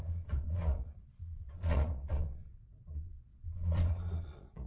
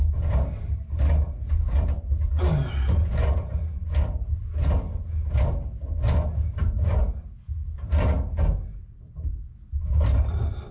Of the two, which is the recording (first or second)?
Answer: second